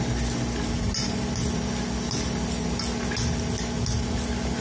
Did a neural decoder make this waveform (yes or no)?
no